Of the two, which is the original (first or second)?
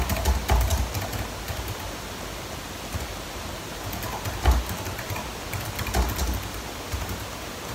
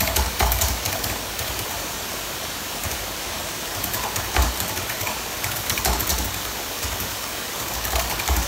first